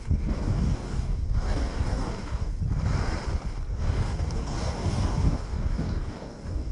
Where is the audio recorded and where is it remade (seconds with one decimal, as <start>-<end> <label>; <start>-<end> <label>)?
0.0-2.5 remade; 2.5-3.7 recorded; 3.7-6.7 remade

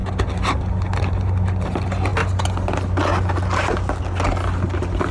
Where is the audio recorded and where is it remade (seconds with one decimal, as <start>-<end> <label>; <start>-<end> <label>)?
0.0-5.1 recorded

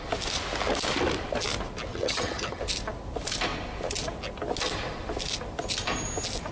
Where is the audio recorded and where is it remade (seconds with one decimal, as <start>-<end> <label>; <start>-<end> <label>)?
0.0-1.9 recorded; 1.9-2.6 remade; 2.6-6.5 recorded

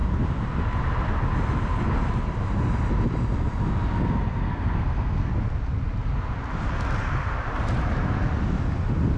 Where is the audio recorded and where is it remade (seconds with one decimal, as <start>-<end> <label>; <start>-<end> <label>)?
0.0-4.0 recorded; 4.0-5.3 remade; 5.3-9.2 recorded

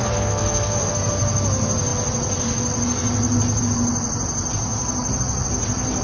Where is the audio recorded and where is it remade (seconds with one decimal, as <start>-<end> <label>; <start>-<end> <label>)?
0.0-0.9 remade; 0.9-6.0 recorded